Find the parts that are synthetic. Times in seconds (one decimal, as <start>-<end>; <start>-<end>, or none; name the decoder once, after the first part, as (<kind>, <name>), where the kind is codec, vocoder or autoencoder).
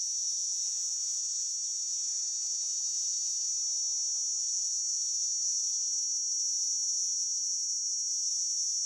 0.0-3.5 (vocoder, Vocos); 4.4-8.9